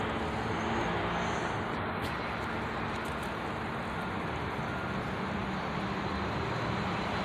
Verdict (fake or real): real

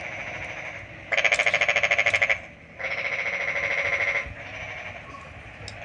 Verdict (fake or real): real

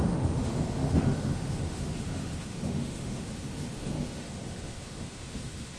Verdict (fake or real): fake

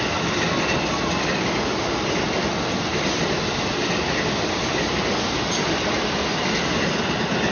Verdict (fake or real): real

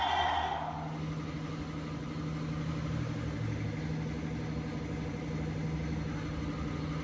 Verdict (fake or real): real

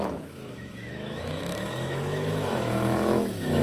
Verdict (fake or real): fake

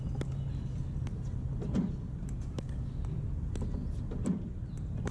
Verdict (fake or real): real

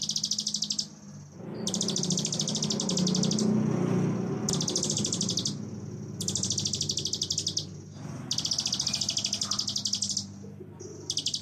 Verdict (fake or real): real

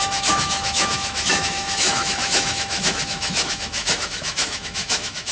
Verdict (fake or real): fake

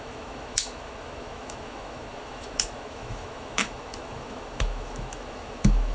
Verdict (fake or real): fake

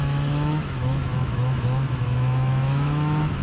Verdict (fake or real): fake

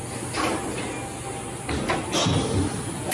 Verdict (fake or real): real